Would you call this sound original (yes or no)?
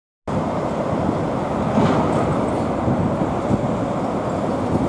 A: yes